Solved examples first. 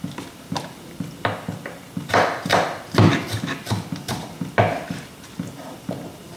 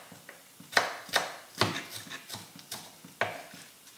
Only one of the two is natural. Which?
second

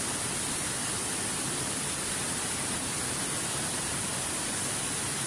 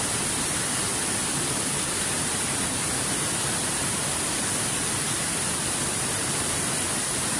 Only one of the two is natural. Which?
first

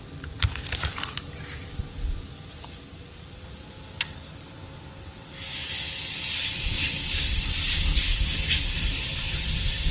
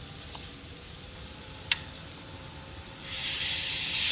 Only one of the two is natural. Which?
first